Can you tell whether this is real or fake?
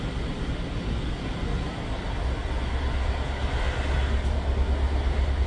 real